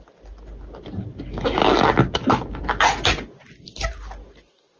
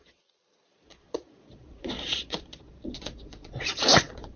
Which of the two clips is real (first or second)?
first